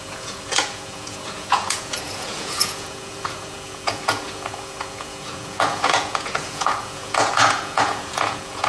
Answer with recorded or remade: remade